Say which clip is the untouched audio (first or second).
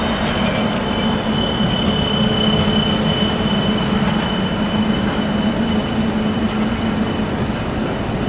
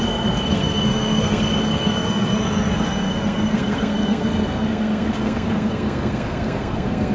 first